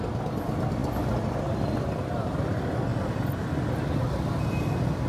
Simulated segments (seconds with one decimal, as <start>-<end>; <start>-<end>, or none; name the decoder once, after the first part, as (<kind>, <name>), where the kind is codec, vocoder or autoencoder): none